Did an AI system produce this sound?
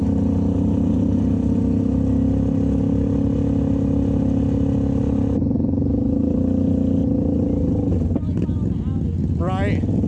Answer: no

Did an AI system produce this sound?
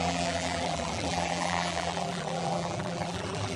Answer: yes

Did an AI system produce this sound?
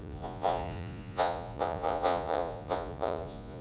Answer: yes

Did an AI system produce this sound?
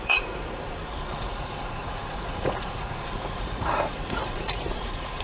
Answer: yes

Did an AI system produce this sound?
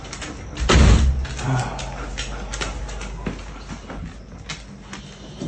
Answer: no